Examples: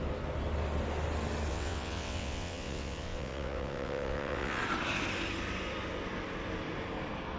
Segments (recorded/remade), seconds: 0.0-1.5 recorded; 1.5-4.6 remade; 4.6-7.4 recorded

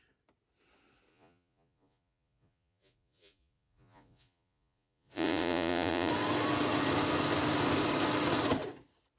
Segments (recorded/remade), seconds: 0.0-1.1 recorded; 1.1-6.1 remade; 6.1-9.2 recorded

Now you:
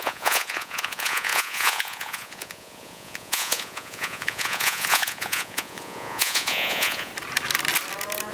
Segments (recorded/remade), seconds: 0.0-7.1 remade; 7.1-8.3 recorded

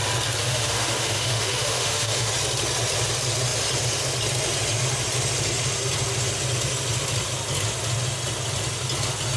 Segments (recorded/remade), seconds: 0.0-0.4 recorded; 0.4-2.3 remade; 2.3-9.4 recorded